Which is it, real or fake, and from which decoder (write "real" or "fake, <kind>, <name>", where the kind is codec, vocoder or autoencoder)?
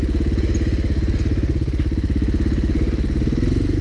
real